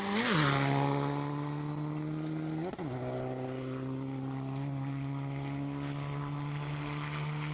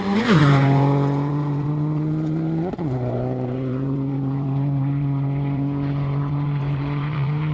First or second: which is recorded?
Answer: first